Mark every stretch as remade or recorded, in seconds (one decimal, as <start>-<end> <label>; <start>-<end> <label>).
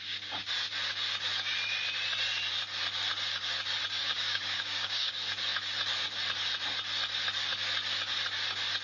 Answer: 0.0-4.0 recorded; 4.0-5.1 remade; 5.1-8.8 recorded